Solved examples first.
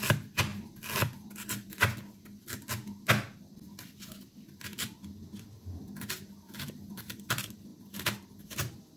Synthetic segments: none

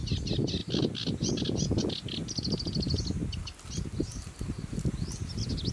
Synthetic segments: none

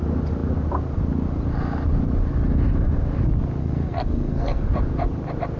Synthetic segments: 3.6-4.7 (codec, SNAC)